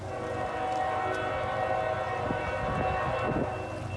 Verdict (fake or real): real